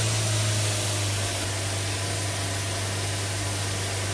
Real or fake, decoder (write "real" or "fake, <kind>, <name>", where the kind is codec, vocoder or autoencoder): real